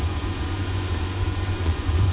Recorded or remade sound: remade